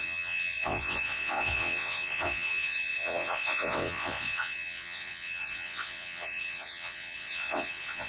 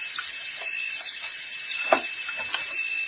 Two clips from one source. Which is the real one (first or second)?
second